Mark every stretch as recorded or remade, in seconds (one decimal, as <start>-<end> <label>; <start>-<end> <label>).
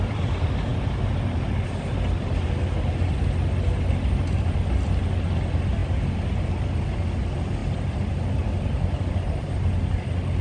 0.0-10.4 recorded